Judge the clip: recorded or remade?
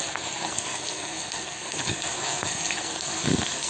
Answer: remade